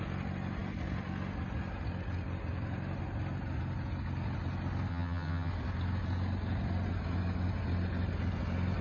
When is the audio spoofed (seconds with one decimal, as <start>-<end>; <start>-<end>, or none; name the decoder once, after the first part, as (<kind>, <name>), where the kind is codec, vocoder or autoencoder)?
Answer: 4.9-5.5 (vocoder, HiFi-GAN)